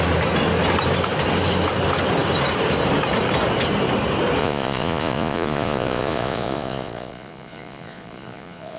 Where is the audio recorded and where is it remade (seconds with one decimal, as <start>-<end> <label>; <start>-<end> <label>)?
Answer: 0.0-4.4 recorded; 4.4-8.8 remade